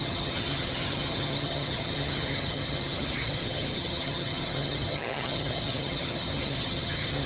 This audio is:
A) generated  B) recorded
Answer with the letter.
A